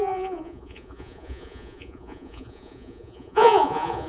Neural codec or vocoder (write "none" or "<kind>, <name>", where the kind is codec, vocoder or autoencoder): vocoder, Vocos